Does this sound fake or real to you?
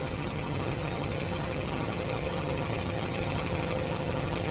fake